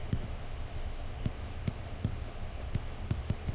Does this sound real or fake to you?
fake